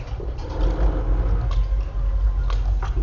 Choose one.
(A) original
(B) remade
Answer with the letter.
A